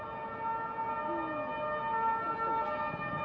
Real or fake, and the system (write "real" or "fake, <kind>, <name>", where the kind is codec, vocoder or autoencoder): real